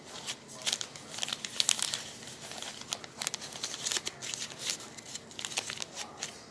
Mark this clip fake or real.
real